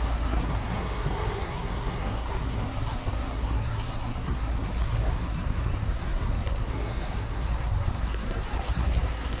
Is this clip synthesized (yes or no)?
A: yes